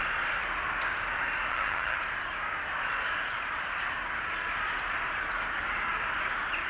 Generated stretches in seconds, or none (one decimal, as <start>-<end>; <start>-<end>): 1.5-2.0